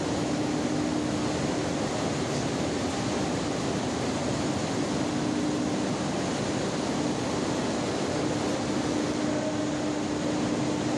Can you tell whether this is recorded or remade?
recorded